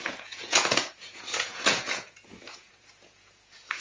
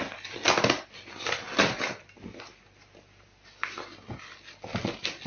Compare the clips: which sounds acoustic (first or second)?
second